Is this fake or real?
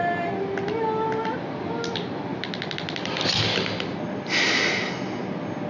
real